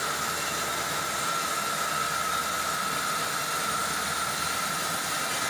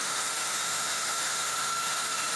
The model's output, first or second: second